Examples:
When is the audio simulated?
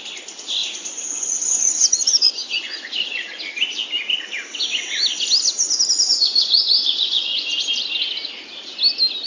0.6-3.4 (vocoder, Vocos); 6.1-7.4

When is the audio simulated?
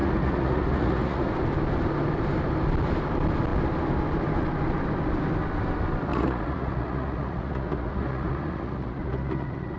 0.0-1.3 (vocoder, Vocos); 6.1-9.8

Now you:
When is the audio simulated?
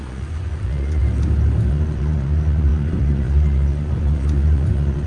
0.0-1.0 (vocoder, Vocos); 1.7-5.1